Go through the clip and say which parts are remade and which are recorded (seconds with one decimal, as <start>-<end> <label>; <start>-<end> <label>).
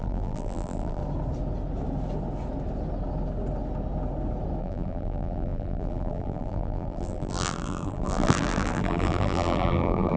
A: 0.0-1.0 remade; 1.0-4.6 recorded; 4.6-10.2 remade